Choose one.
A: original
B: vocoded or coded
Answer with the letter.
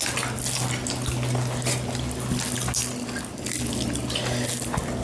A